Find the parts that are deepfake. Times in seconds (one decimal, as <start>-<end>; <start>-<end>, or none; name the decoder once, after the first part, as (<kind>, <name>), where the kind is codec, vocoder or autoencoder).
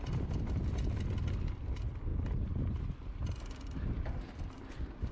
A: none